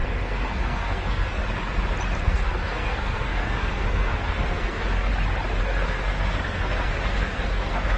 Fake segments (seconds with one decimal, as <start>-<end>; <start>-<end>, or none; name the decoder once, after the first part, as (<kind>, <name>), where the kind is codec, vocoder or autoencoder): 0.0-1.4 (codec, SNAC); 2.2-5.1; 5.6-8.0